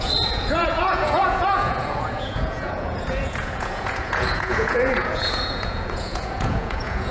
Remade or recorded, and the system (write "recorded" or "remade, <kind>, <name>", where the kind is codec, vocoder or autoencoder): remade, vocoder, Vocos